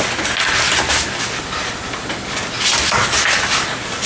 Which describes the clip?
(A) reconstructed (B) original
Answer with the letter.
B